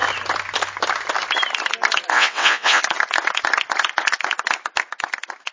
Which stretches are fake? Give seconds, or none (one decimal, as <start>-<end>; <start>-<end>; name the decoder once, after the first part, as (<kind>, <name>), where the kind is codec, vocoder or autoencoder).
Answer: 2.1-2.8 (vocoder, WaveNeXt)